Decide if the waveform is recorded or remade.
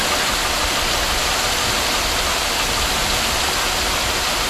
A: recorded